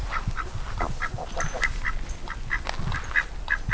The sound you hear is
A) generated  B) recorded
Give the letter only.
B